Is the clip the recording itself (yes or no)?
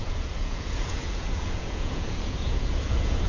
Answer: no